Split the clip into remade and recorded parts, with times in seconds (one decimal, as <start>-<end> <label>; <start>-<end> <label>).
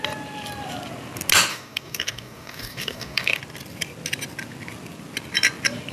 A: 0.0-1.5 recorded; 1.5-3.4 remade; 3.4-5.9 recorded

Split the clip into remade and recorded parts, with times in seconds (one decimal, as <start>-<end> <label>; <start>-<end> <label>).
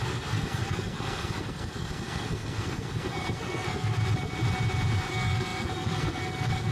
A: 0.0-4.0 remade; 4.0-5.1 recorded; 5.1-6.7 remade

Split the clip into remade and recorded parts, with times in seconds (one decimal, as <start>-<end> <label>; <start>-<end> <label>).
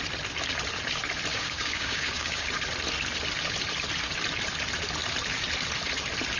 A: 0.0-1.3 recorded; 1.3-2.5 remade; 2.5-6.4 recorded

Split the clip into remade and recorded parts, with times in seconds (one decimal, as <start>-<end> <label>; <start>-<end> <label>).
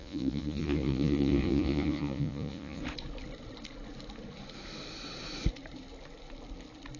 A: 0.0-2.8 remade; 2.8-7.0 recorded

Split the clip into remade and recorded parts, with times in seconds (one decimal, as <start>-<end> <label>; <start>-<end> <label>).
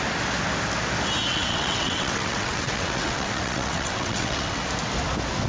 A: 0.0-1.3 recorded; 1.3-4.6 remade; 4.6-5.5 recorded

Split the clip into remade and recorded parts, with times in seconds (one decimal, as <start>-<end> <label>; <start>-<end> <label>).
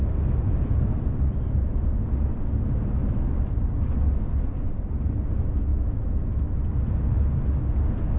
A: 0.0-5.7 recorded; 5.7-6.6 remade; 6.6-8.2 recorded